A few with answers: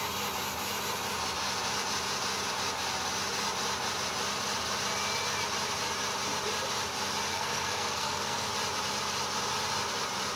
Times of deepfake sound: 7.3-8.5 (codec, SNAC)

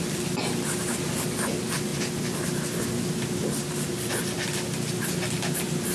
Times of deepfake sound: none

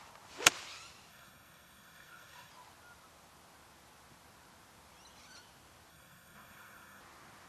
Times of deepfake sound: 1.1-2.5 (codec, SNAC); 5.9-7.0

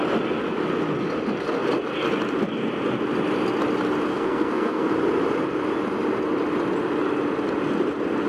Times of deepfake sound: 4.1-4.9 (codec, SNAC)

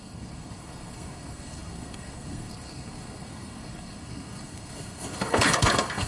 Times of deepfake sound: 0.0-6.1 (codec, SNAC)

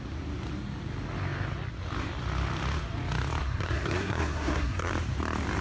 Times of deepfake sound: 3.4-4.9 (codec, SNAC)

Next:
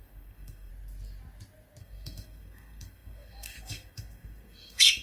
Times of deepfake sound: 0.0-0.7 (codec, SNAC); 1.8-5.0

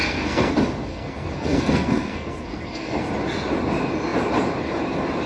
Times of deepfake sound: 0.0-0.5 (codec, SNAC); 0.9-3.1